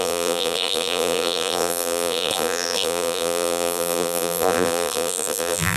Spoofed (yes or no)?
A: yes